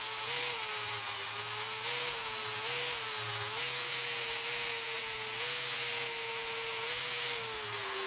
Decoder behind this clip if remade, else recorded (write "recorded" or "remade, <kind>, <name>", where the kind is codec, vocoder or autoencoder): recorded